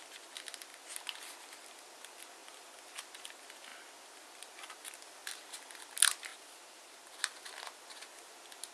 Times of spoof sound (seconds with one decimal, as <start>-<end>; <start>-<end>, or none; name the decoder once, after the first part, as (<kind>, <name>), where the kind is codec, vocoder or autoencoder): none